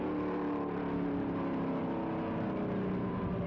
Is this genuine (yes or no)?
yes